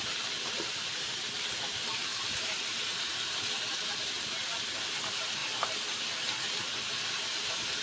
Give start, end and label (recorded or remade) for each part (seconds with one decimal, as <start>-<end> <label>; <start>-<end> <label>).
0.0-7.8 recorded